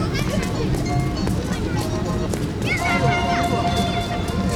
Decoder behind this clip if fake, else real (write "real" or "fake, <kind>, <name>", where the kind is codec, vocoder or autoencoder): real